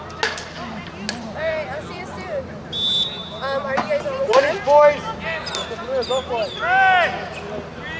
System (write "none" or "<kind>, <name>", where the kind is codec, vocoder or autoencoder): none